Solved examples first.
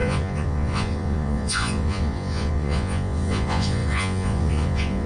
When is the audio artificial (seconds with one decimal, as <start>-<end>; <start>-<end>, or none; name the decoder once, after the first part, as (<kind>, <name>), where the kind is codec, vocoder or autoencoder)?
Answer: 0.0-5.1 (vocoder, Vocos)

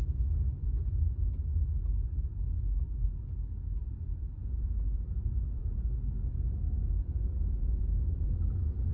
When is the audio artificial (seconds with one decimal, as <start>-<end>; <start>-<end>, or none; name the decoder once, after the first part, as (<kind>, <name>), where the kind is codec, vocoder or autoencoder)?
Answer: 4.4-8.9 (vocoder, Vocos)

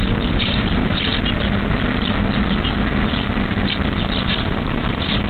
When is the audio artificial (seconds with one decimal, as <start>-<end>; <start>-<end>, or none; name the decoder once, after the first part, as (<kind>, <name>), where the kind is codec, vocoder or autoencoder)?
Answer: 0.0-1.1 (vocoder, BigVGAN v2); 4.3-5.3